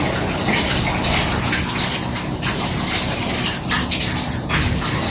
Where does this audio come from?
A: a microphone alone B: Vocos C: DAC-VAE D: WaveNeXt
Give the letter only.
A